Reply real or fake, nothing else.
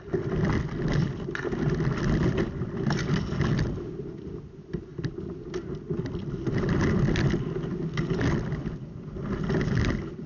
real